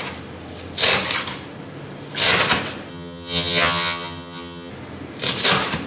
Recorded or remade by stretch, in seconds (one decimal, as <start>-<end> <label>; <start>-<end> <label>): 0.0-2.9 recorded; 2.9-4.7 remade; 4.7-5.9 recorded